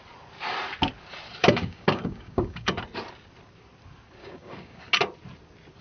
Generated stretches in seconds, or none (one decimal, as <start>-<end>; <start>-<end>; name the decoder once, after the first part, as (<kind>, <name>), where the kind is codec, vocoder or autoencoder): 1.4-2.7 (codec, DAC); 4.2-4.8